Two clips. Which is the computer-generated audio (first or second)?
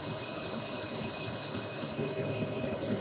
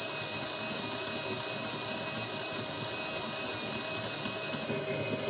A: first